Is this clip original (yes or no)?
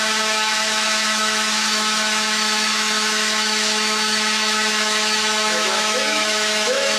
no